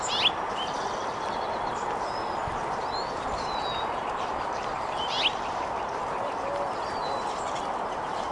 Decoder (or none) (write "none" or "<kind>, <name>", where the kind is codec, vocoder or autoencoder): vocoder, BigVGAN v2